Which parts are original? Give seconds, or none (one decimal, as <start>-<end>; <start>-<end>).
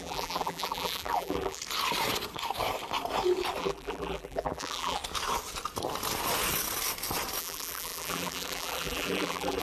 1.6-3.6; 5.0-7.4